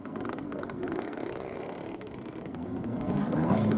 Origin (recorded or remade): remade